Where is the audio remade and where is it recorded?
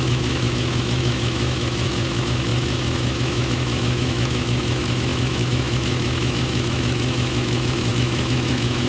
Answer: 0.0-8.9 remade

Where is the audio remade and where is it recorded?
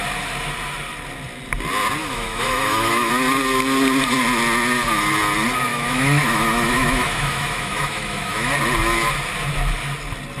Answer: 0.0-2.0 recorded; 2.0-3.1 remade; 3.1-5.7 recorded; 5.7-8.5 remade; 8.5-10.4 recorded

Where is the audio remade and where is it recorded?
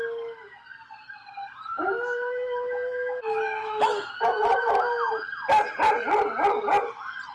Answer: 0.0-1.7 recorded; 1.7-5.1 remade; 5.1-7.3 recorded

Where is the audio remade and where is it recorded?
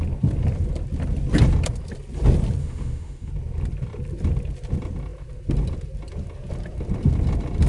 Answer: 0.0-2.6 recorded; 2.6-3.3 remade; 3.3-7.7 recorded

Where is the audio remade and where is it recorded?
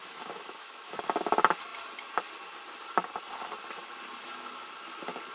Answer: 0.0-1.0 remade; 1.0-5.3 recorded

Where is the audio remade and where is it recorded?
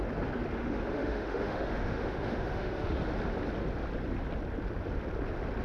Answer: 0.0-0.6 recorded; 0.6-3.0 remade; 3.0-5.6 recorded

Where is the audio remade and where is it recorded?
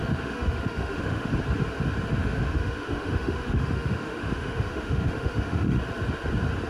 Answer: 0.0-1.3 remade; 1.3-2.2 recorded; 2.2-5.8 remade; 5.8-6.7 recorded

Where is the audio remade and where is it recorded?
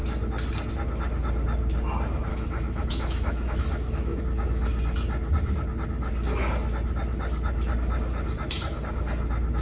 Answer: 0.0-2.3 recorded; 2.3-4.2 remade; 4.2-9.6 recorded